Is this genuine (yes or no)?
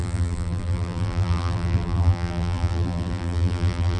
no